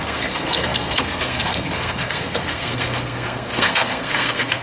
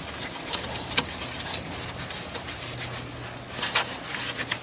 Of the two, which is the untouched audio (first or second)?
second